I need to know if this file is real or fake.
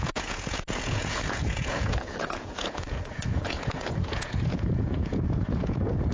fake